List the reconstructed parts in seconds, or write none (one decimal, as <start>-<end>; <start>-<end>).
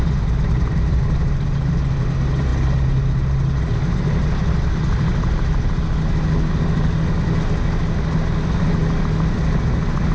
none